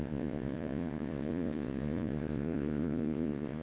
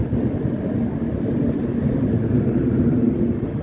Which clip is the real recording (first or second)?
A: second